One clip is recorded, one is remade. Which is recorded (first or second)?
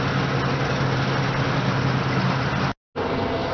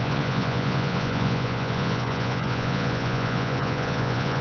first